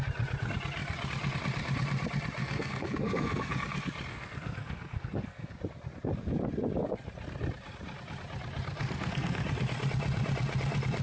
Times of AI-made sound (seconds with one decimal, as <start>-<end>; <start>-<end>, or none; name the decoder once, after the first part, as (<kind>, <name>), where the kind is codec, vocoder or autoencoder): 2.4-3.5 (codec, SNAC); 4.1-5.6; 8.8-9.4